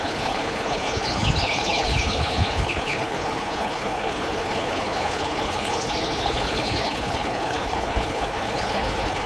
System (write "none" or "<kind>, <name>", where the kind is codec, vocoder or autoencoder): codec, HILCodec